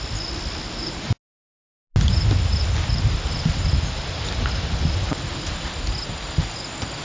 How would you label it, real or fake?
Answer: real